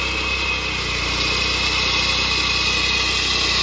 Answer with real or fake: real